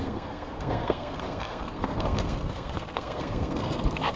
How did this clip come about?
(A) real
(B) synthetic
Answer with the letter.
B